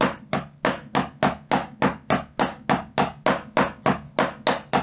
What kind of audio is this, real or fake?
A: real